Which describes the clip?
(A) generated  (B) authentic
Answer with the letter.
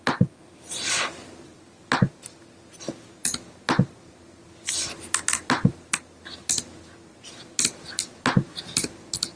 B